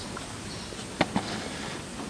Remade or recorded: recorded